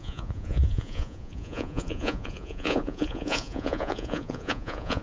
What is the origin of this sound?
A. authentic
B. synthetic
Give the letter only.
B